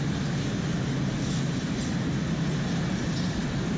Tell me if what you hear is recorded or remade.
recorded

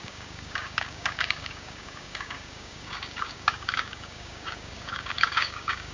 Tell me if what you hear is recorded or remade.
remade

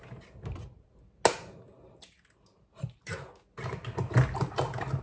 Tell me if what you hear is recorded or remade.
recorded